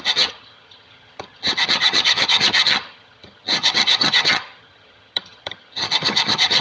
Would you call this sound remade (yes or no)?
yes